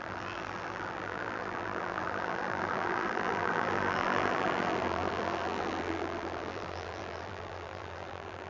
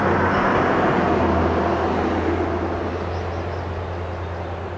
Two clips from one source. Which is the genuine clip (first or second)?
second